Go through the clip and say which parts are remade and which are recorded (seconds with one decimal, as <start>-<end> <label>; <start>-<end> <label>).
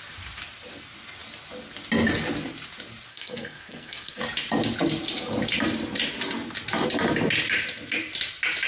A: 0.0-3.1 recorded; 3.1-4.2 remade; 4.2-8.7 recorded